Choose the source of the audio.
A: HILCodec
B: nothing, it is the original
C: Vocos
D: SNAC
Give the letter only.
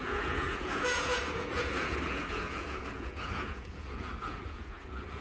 C